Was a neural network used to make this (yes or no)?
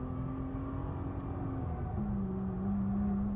no